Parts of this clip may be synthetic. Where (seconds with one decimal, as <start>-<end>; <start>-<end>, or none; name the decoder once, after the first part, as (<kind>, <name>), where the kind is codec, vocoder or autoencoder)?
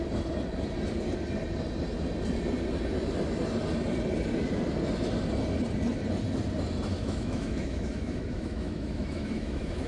6.9-9.9 (autoencoder, DAC-VAE)